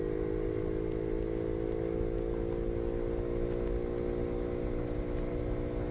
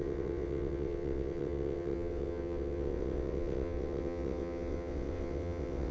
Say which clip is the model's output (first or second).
second